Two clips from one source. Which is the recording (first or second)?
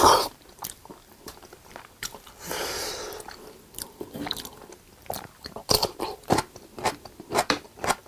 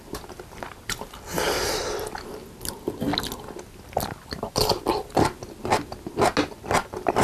second